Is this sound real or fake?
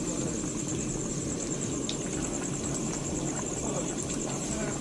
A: real